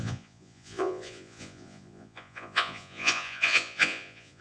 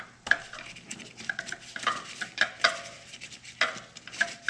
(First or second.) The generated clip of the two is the first